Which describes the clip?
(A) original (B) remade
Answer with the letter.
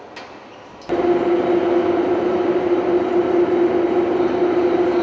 A